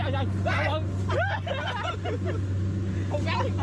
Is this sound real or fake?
real